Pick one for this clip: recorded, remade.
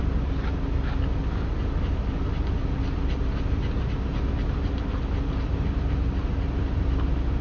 recorded